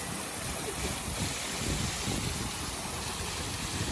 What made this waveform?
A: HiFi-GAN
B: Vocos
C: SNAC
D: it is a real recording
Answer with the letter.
D